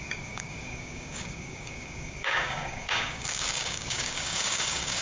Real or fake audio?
fake